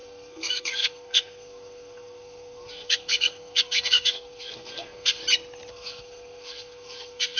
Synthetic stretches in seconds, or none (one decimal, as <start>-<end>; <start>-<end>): 0.0-5.2; 5.7-7.4